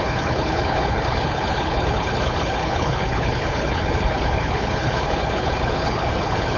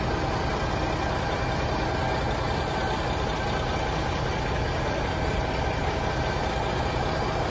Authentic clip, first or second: second